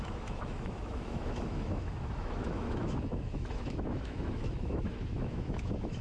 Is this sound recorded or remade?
remade